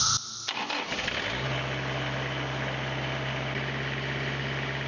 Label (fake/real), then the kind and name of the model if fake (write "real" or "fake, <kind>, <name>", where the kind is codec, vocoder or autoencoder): real